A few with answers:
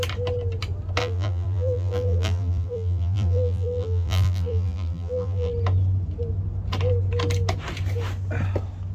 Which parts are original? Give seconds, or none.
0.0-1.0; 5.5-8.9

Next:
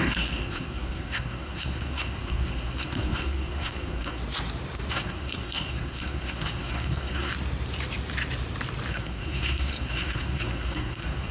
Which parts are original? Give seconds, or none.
4.2-4.9; 7.3-8.9

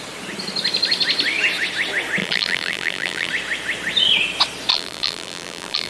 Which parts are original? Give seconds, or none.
0.0-2.2; 3.3-4.7

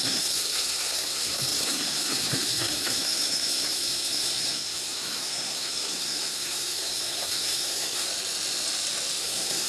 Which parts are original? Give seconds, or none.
8.1-9.2